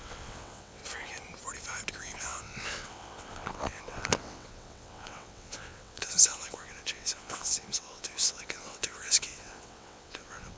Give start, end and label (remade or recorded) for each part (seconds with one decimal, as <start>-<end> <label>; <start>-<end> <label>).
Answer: 0.0-0.8 remade; 0.8-1.9 recorded; 1.9-10.6 remade